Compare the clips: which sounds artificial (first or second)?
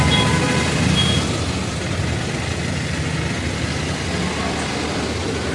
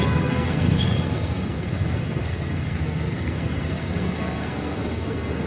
second